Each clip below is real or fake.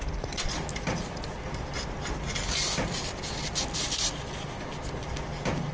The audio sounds real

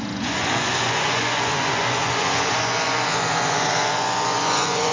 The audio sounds fake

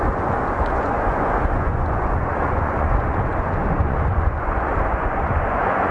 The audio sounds fake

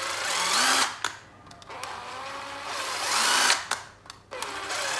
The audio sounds real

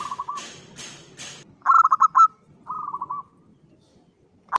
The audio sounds real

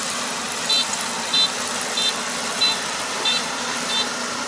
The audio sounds real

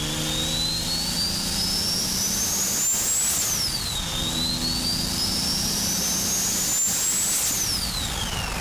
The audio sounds real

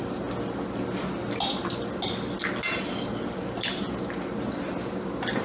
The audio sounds real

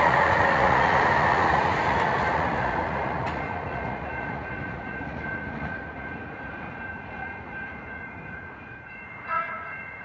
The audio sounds fake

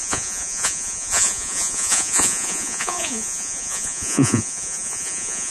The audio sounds fake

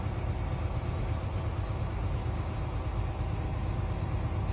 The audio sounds real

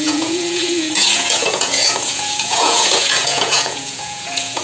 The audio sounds fake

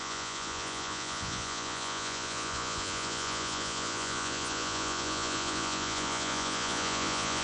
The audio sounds fake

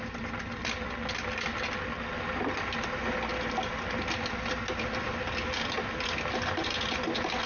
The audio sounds real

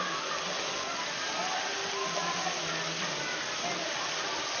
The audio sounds real